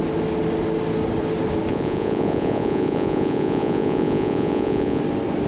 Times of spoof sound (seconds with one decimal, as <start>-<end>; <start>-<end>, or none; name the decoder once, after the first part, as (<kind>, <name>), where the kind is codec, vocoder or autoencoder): 1.7-5.0 (vocoder, Vocos)